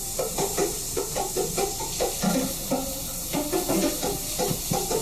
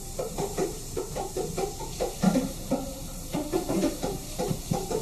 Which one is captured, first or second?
first